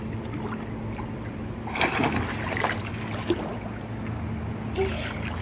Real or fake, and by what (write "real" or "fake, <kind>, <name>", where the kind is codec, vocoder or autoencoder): real